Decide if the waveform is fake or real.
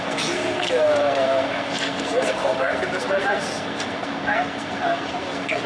fake